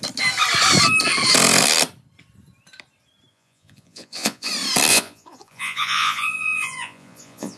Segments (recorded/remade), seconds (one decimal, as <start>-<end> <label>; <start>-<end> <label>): 0.0-3.3 recorded; 3.3-4.5 remade; 4.5-4.9 recorded; 4.9-7.6 remade